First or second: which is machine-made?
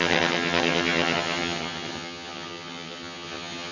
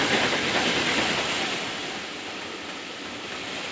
first